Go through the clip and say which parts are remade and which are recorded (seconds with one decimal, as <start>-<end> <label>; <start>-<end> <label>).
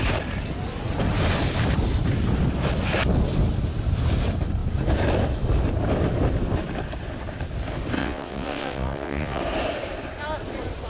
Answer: 0.0-8.0 recorded; 8.0-9.4 remade; 9.4-10.9 recorded